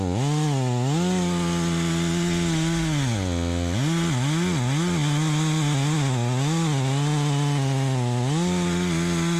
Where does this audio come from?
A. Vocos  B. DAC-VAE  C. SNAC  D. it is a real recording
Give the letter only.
D